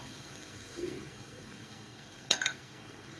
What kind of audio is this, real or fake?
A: fake